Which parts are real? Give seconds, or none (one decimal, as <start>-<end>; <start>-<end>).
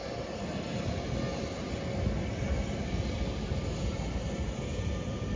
0.0-5.4